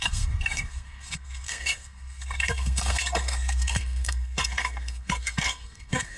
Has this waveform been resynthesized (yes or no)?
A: yes